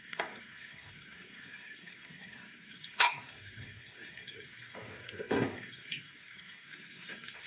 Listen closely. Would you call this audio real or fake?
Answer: fake